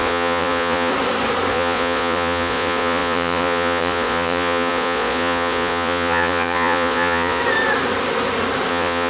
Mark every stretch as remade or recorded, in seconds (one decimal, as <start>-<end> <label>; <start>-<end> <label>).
0.0-0.9 remade; 0.9-1.5 recorded; 1.5-7.4 remade; 7.4-8.7 recorded; 8.7-9.1 remade